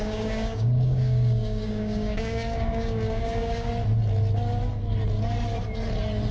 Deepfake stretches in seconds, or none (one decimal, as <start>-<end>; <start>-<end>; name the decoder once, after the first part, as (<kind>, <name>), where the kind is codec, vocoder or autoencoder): 0.0-3.7 (codec, DAC)